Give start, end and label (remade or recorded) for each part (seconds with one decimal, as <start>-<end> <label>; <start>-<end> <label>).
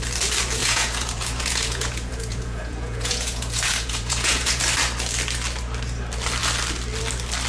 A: 0.0-0.6 recorded; 0.6-4.6 remade; 4.6-7.5 recorded